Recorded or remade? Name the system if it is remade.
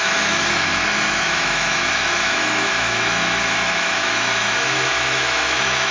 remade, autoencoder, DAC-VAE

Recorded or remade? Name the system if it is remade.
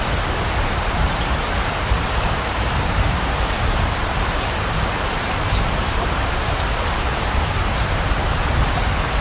remade, vocoder, BigVGAN v2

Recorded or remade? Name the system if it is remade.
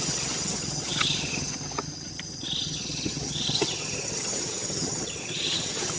remade, vocoder, HiFi-GAN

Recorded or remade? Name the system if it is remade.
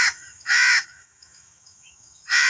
remade, autoencoder, DAC-VAE